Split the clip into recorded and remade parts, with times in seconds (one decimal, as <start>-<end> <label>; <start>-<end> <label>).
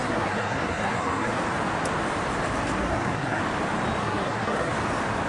0.0-1.4 remade; 1.4-2.8 recorded; 2.8-3.4 remade; 3.4-4.0 recorded; 4.0-4.7 remade; 4.7-5.3 recorded